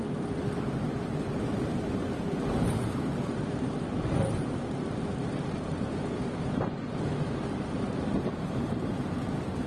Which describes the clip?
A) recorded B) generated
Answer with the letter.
B